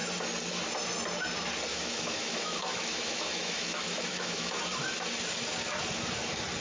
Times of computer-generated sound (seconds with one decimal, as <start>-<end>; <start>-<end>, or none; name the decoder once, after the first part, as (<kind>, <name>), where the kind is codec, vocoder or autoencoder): 1.7-4.6 (autoencoder, DAC-VAE)